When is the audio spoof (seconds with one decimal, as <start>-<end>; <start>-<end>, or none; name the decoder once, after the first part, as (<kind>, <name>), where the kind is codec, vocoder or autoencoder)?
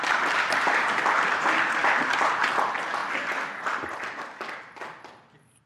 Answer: none